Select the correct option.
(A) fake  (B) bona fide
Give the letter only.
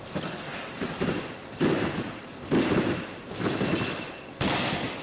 B